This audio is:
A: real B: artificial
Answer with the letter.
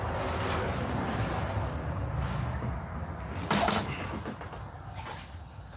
A